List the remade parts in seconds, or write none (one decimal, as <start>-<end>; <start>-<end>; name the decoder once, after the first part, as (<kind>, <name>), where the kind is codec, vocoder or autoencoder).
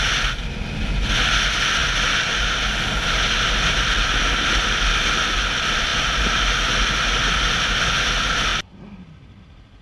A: none